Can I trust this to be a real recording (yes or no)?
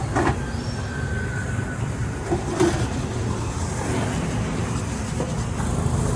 yes